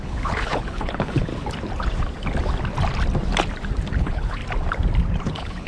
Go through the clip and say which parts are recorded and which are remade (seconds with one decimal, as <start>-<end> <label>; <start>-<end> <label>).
0.0-1.3 remade; 1.3-4.0 recorded; 4.0-4.4 remade; 4.4-5.2 recorded; 5.2-5.7 remade

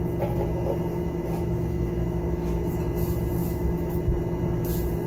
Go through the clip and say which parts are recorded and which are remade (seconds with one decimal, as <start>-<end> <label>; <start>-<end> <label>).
0.0-0.9 recorded; 0.9-2.8 remade; 2.8-3.4 recorded; 3.4-4.0 remade; 4.0-5.1 recorded

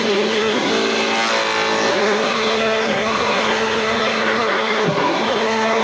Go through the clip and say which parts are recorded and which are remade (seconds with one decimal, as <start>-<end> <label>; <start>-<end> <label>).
0.0-0.7 remade; 0.7-1.9 recorded; 1.9-5.8 remade

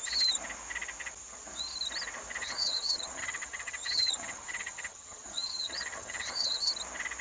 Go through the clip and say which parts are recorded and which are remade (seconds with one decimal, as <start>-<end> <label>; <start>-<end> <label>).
0.0-2.4 recorded; 2.4-6.7 remade; 6.7-7.2 recorded

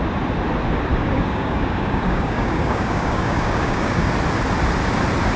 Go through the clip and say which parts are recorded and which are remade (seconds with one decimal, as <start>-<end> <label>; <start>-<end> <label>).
0.0-0.9 recorded; 0.9-4.1 remade; 4.1-5.4 recorded